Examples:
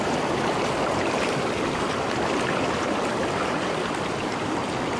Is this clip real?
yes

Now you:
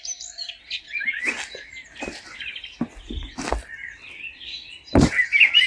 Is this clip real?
yes